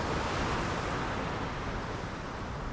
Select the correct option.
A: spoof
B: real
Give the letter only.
B